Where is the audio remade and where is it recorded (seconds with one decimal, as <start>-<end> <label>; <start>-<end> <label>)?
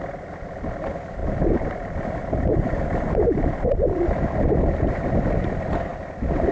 0.0-5.9 remade; 5.9-6.5 recorded